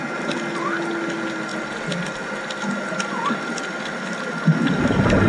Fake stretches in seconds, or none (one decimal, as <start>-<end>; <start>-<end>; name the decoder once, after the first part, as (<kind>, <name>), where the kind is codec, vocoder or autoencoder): none